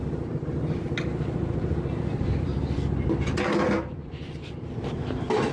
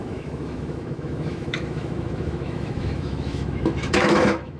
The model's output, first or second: second